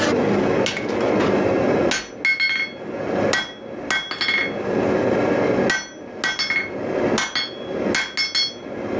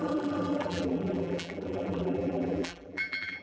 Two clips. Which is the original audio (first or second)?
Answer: first